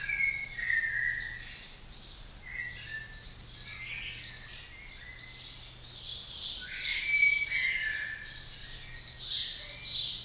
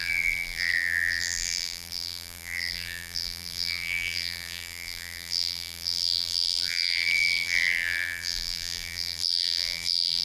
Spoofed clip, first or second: second